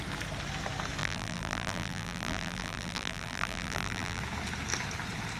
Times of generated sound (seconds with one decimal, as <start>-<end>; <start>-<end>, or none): 1.0-4.2